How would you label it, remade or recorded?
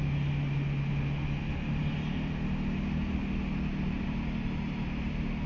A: recorded